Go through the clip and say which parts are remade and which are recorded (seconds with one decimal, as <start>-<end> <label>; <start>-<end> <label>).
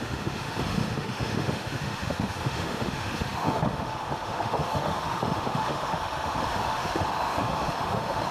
0.0-8.3 remade